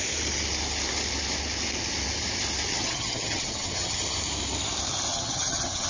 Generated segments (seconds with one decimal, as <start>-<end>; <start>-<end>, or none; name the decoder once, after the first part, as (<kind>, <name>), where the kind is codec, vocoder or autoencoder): 2.7-4.0 (vocoder, HiFi-GAN); 5.1-5.9